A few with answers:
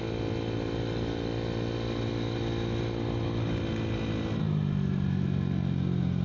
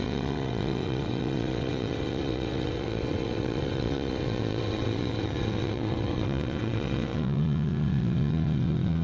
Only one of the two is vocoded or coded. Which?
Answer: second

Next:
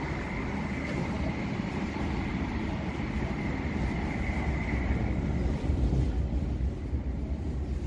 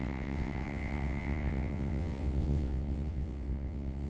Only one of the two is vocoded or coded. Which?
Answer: second